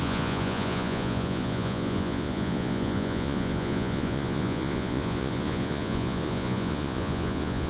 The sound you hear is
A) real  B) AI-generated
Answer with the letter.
B